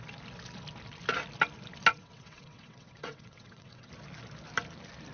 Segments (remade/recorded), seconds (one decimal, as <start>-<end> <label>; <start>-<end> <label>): 0.0-1.9 recorded; 1.9-3.9 remade; 3.9-5.1 recorded